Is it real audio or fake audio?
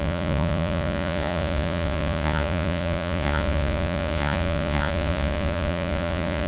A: fake